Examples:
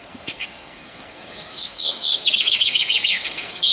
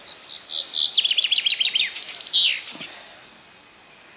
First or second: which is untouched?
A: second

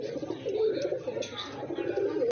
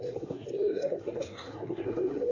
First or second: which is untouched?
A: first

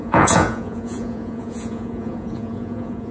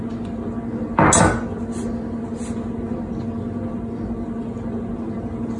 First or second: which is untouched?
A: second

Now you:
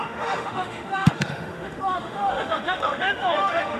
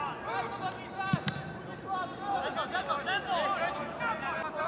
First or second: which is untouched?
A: second